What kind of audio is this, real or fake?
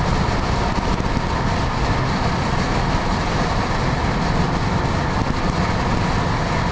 real